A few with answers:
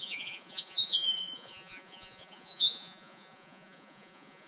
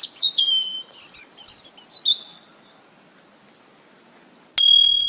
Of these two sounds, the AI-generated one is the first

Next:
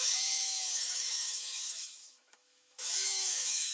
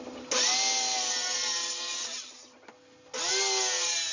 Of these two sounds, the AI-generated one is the first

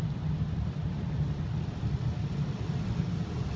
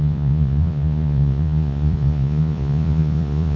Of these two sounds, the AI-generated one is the second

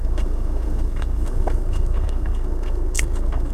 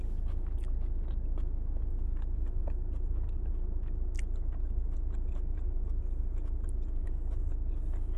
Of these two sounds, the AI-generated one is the first